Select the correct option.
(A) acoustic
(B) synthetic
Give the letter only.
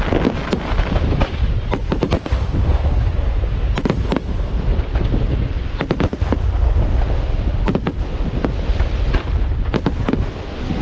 A